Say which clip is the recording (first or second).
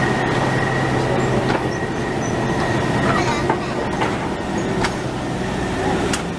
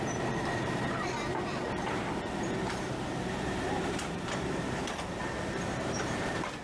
first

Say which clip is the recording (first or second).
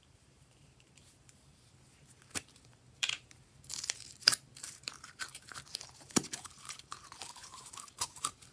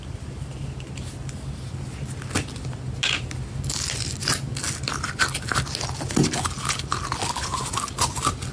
second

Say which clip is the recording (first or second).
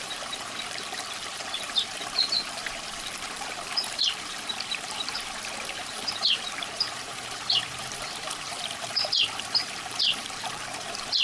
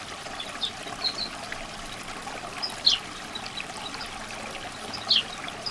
second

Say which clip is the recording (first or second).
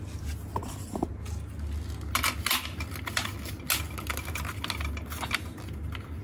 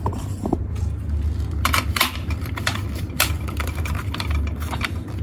first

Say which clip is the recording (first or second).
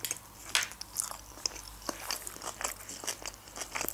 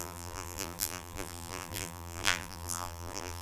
first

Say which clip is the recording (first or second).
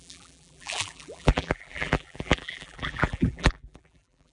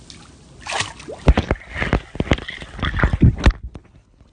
second